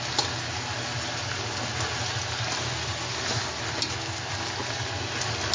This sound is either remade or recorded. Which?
recorded